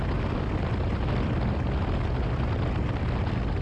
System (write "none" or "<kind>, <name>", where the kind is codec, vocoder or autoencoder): none